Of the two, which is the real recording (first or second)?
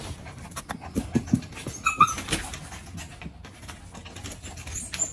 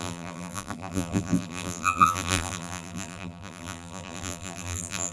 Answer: first